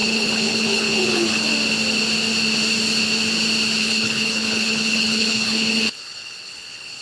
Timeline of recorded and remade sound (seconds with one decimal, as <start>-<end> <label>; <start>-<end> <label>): 0.0-1.5 remade; 1.5-3.8 recorded; 3.8-7.0 remade